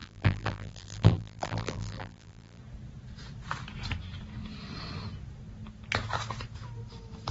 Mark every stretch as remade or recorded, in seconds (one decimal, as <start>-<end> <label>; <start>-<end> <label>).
0.0-2.6 remade; 2.6-7.3 recorded